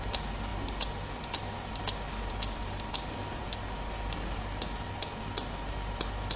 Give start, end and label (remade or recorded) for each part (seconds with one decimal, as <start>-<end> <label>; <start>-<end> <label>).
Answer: 0.0-6.4 recorded